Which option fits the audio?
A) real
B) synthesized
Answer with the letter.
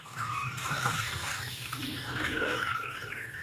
B